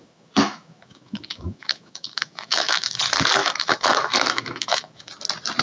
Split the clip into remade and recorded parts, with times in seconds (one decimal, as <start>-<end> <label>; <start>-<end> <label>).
0.0-3.0 remade; 3.0-3.4 recorded; 3.4-5.1 remade; 5.1-5.6 recorded